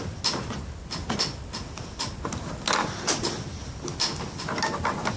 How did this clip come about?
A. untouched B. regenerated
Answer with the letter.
A